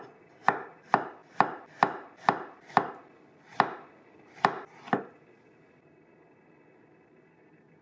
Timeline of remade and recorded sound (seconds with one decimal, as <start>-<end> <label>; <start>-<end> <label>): 0.0-7.8 recorded